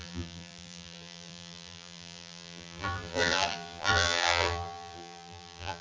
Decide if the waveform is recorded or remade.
remade